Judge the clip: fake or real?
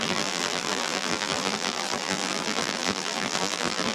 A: fake